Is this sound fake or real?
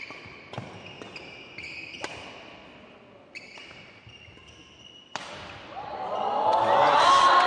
real